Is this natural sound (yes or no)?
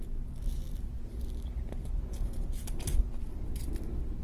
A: yes